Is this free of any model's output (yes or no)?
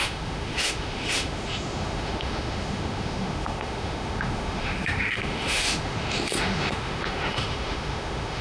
no